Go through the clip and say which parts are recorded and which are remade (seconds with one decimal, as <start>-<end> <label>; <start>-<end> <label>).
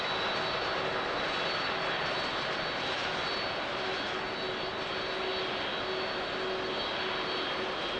0.0-8.0 recorded